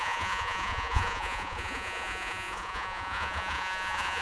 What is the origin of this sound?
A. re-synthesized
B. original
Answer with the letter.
A